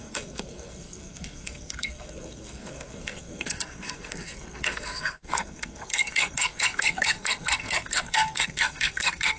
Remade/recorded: remade